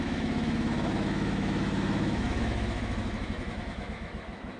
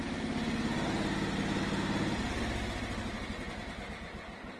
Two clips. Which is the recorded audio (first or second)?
second